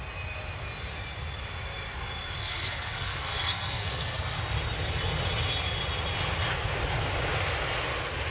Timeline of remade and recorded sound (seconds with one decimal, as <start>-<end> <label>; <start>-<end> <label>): 0.0-2.4 recorded; 2.4-4.4 remade; 4.4-8.3 recorded